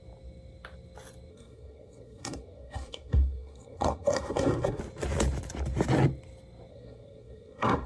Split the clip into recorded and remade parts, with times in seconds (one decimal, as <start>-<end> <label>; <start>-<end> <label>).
0.0-1.3 recorded; 1.3-4.8 remade; 4.8-6.7 recorded; 6.7-7.9 remade